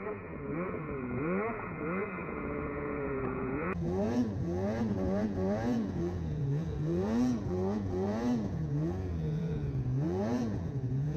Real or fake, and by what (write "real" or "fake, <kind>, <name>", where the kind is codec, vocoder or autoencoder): fake, vocoder, Vocos